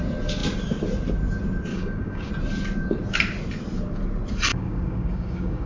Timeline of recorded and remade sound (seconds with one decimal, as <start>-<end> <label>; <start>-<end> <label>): 0.0-1.7 recorded; 1.7-2.3 remade; 2.3-4.5 recorded; 4.5-5.7 remade